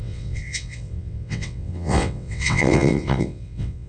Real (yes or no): no